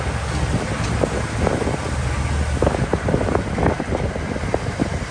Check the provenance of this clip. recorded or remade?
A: recorded